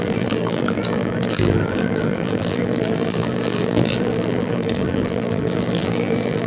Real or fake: fake